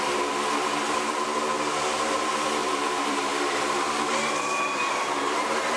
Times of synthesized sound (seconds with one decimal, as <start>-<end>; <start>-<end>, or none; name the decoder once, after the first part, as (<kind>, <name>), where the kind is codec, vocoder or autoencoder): 2.6-4.9 (vocoder, BigVGAN v2)